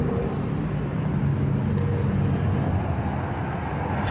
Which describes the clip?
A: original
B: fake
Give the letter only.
A